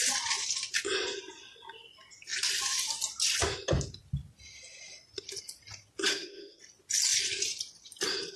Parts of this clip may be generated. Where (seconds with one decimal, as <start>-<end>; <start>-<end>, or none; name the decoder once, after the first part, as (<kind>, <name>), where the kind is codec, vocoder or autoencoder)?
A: 6.1-6.6 (codec, SNAC)